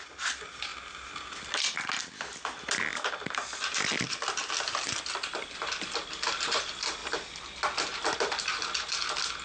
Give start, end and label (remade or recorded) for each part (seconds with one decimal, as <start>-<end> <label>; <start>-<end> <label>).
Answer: 0.0-9.4 recorded